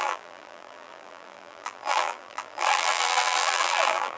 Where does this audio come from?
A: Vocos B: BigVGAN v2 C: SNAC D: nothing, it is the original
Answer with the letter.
B